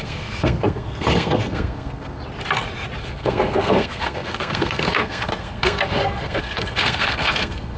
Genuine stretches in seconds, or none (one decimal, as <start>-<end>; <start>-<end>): 2.2-3.0